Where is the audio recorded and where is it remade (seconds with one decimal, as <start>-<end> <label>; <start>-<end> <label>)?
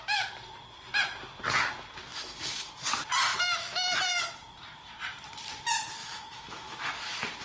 0.0-2.1 recorded; 2.1-2.7 remade; 2.7-3.3 recorded; 3.3-4.2 remade; 4.2-6.0 recorded; 6.0-6.9 remade; 6.9-7.4 recorded